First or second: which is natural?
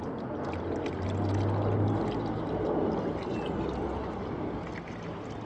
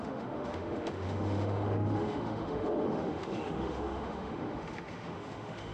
first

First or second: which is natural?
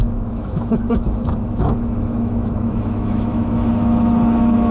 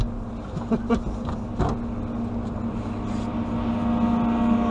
second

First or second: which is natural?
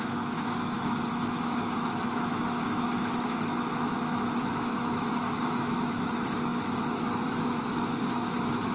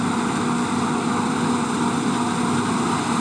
second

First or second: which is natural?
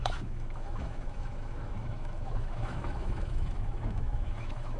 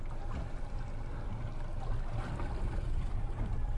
second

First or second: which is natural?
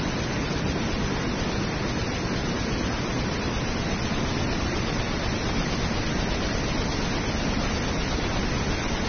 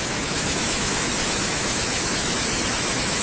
first